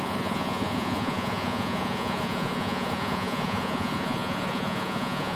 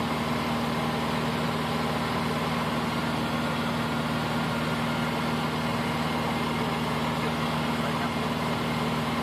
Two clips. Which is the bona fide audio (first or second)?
second